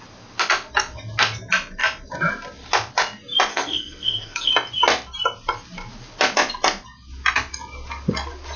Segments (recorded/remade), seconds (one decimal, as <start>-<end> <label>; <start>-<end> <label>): 0.0-3.5 recorded; 3.5-4.5 remade; 4.5-8.6 recorded